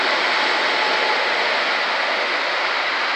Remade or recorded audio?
recorded